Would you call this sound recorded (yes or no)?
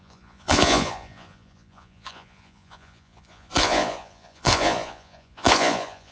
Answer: no